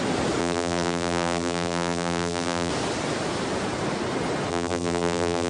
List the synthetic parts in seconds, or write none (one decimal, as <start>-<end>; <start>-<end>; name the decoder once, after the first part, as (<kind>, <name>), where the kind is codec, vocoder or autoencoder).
0.4-2.7 (vocoder, BigVGAN v2); 4.5-5.5